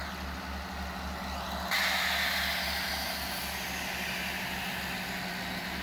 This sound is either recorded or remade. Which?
recorded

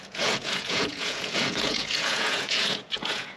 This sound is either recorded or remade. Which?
remade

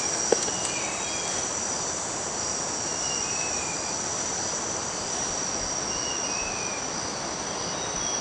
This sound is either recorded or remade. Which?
recorded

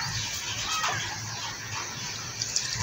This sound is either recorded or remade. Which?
recorded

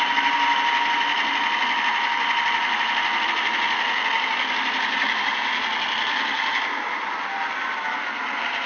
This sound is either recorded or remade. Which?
recorded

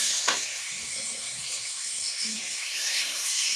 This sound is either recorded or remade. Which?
remade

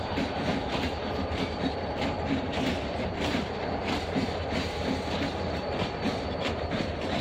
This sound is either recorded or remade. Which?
remade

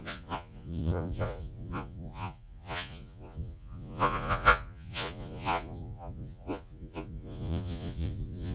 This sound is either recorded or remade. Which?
remade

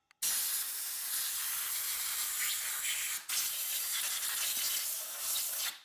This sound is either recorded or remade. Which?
recorded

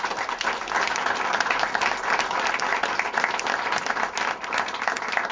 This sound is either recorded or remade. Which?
recorded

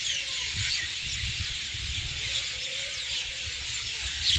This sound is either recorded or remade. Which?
remade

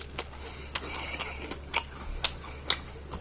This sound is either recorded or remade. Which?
recorded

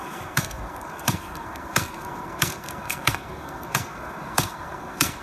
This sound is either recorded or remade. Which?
remade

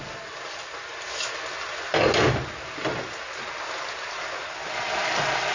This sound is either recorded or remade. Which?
recorded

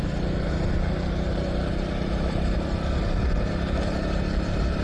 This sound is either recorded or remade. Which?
recorded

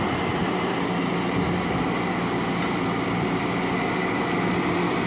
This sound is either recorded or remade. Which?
recorded